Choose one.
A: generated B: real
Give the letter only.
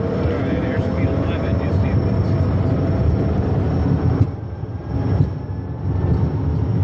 B